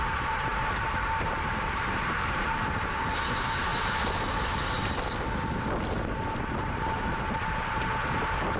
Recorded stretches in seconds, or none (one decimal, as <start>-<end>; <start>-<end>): 3.7-6.6